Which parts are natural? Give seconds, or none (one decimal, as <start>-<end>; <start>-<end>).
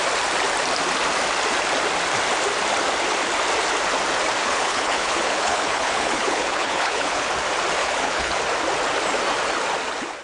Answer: 0.0-4.4; 7.3-7.8; 8.4-10.2